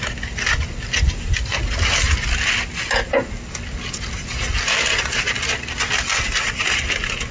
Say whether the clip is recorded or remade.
recorded